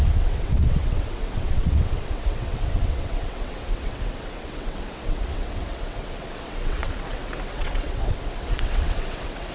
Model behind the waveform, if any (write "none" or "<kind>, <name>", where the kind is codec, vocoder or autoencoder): vocoder, WaveNeXt